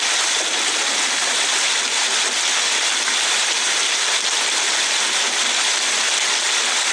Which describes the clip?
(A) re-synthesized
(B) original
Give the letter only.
B